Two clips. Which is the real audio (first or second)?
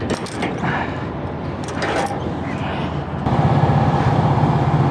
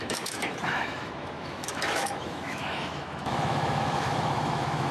first